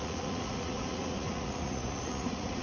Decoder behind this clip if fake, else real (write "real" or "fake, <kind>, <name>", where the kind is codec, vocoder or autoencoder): fake, vocoder, Vocos